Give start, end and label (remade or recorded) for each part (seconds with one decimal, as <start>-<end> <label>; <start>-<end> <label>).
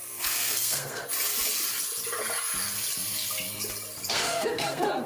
0.0-1.0 remade; 1.0-4.1 recorded; 4.1-5.1 remade